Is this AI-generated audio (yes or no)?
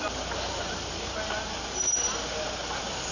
no